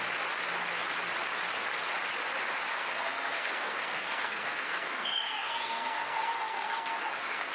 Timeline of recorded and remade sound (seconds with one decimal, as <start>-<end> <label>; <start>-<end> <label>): 0.0-2.7 recorded; 2.7-7.5 remade